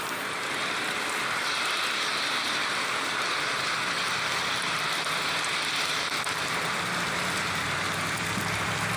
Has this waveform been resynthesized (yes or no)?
yes